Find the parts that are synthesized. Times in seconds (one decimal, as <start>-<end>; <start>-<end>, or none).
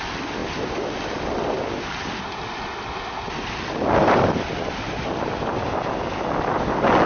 none